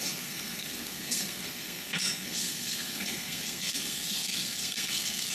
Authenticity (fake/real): fake